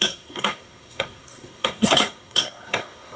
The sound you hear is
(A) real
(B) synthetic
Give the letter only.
B